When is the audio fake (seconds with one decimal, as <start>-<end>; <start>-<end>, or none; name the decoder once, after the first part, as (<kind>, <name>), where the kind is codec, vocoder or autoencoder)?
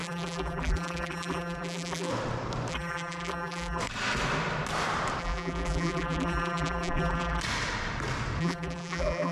0.0-2.1 (vocoder, BigVGAN v2); 2.7-3.8; 5.2-7.4; 8.4-9.3